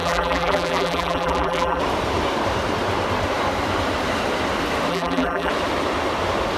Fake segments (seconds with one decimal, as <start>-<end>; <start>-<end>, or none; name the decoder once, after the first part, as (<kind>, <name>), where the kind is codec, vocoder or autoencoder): 0.0-1.8 (vocoder, BigVGAN v2); 4.9-5.5